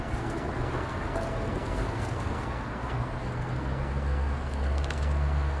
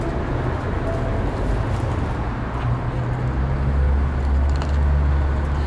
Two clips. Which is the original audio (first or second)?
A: second